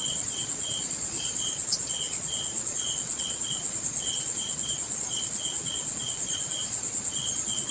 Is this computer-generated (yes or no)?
yes